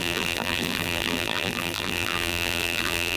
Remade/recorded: remade